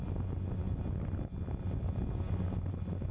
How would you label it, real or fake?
real